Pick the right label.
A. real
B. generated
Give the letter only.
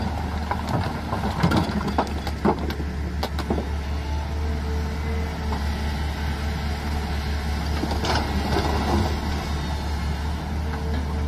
A